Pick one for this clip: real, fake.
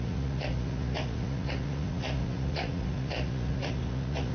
fake